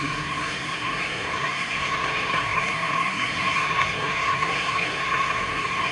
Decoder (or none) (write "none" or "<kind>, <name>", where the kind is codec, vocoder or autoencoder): codec, SNAC